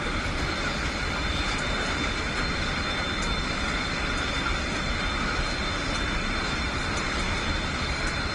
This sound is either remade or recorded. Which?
recorded